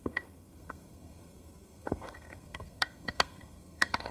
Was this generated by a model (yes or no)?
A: yes